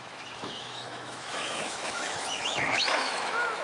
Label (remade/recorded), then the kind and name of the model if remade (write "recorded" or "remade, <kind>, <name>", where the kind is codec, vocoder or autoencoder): remade, autoencoder, DAC-VAE